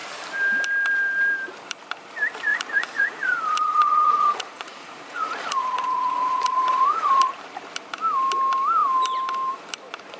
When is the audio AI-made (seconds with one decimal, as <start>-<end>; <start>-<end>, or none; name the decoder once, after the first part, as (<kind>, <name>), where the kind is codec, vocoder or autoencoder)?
2.5-7.4 (vocoder, Vocos)